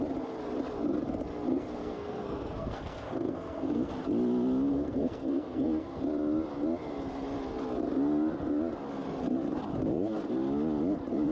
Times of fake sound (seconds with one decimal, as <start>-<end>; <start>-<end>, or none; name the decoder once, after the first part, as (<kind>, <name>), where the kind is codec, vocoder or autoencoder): 1.5-3.9 (codec, SNAC); 4.7-6.0